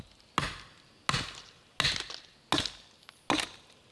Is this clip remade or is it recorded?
recorded